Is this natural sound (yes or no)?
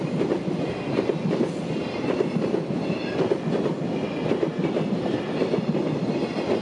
yes